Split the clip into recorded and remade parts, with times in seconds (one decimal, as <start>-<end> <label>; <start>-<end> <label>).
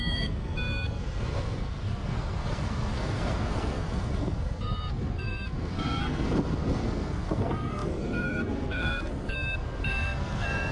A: 0.0-10.7 remade